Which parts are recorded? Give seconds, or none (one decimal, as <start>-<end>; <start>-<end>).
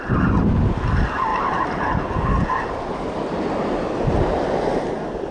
0.0-5.3